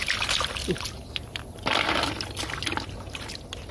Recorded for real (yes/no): yes